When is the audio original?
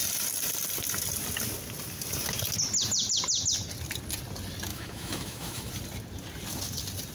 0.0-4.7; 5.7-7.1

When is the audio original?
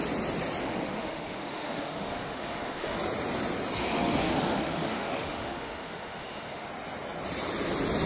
0.0-0.6; 3.0-3.8; 6.7-8.1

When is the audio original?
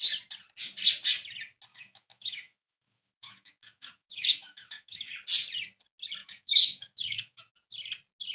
0.0-1.7; 5.1-6.2; 7.5-8.3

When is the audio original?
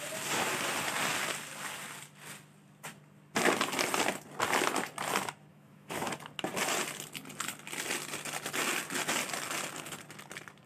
0.0-5.5; 6.1-10.7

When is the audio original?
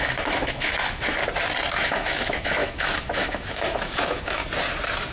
1.2-1.7; 4.4-5.1